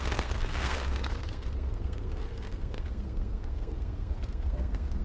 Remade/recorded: remade